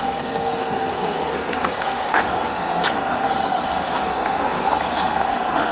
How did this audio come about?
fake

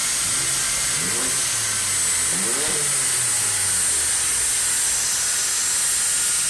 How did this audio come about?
real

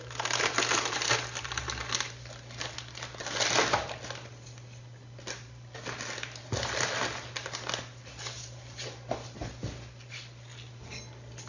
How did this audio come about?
real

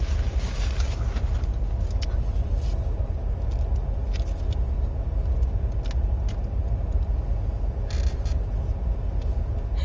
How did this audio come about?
real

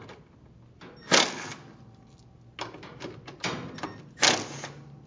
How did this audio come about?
real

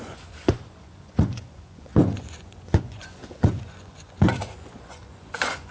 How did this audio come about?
fake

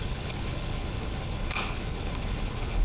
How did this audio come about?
fake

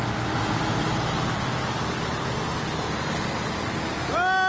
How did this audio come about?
real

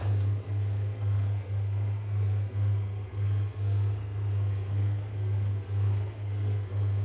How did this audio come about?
fake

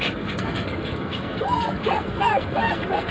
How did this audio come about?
fake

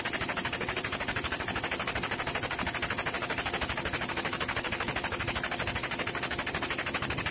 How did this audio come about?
real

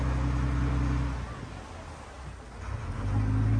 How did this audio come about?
real